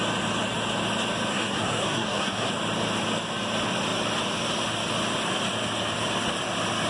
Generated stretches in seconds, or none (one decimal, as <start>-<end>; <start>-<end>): 1.3-2.5